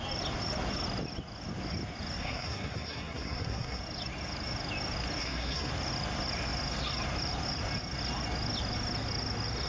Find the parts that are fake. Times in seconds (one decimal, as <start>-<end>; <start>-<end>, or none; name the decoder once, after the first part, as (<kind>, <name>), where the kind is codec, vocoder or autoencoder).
2.2-3.8 (codec, SNAC); 5.2-5.7